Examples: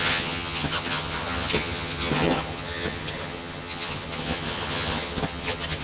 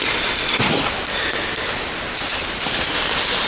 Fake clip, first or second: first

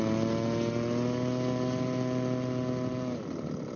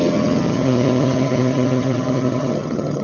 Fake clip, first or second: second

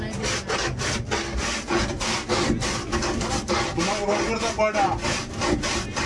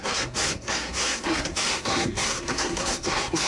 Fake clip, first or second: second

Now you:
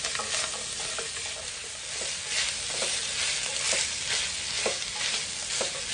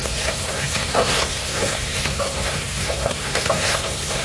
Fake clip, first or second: second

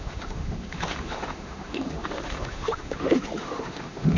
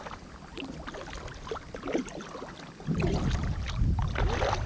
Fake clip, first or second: first